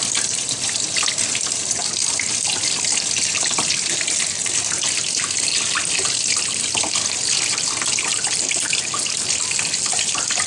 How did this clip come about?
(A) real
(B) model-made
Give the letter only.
A